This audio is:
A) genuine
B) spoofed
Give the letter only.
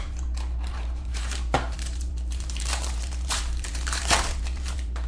B